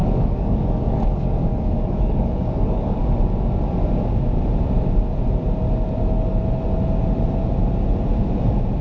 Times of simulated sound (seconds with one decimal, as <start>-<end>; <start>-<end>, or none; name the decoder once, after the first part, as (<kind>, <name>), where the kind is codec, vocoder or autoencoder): 0.0-3.0 (codec, DAC)